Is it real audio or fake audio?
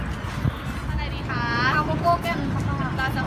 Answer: real